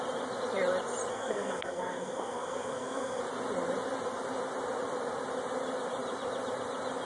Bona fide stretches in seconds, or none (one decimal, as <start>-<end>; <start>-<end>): 0.0-1.1; 3.2-7.1